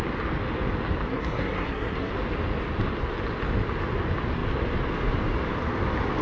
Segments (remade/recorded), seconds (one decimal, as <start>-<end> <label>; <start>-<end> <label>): 0.0-1.1 recorded; 1.1-2.1 remade; 2.1-6.2 recorded